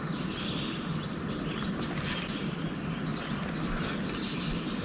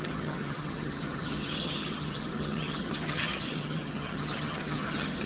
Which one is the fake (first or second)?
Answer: second